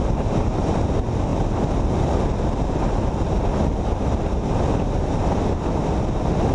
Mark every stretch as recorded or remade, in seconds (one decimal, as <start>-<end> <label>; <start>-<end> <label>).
0.0-6.5 recorded